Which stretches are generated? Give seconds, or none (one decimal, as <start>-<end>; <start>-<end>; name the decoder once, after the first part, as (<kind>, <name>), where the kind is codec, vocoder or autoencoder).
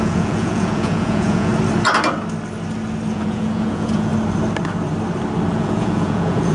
0.0-1.5 (vocoder, Vocos); 3.1-4.1; 5.5-6.5